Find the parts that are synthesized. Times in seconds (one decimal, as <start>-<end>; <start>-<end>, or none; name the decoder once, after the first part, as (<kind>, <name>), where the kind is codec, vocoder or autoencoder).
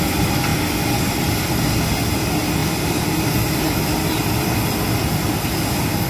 none